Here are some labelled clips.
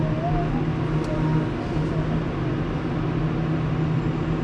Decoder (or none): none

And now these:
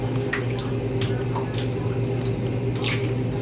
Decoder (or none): none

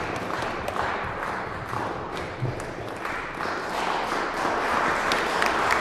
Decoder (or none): none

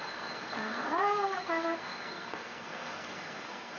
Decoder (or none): codec, SNAC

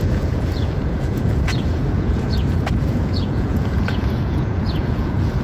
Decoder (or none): vocoder, Vocos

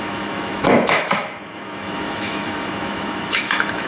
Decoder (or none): autoencoder, DAC-VAE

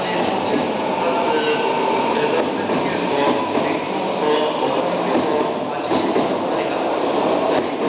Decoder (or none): none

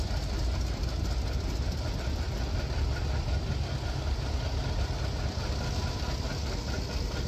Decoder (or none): none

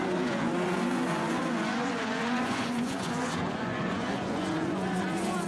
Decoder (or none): vocoder, Vocos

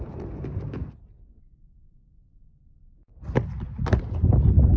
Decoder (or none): none